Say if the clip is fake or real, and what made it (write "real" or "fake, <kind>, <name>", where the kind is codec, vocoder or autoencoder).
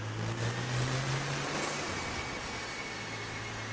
real